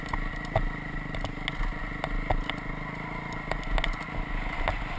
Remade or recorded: recorded